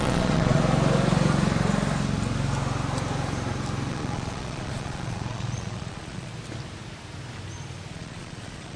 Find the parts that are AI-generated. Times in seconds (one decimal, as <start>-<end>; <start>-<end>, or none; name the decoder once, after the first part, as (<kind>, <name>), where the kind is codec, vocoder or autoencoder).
0.0-0.6 (vocoder, Vocos); 3.9-6.3; 7.9-8.8